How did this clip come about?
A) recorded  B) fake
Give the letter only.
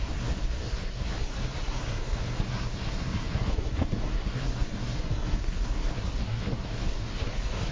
B